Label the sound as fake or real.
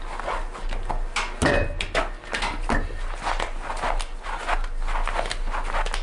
real